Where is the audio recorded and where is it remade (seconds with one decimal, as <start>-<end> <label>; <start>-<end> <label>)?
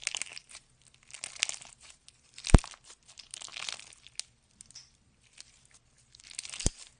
0.0-7.0 recorded